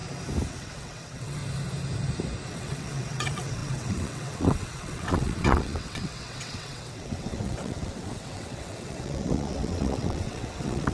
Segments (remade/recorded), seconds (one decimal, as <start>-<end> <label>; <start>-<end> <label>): 0.0-0.5 recorded; 0.5-1.4 remade; 1.4-2.5 recorded; 2.5-10.9 remade